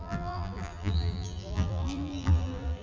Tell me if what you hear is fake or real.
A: fake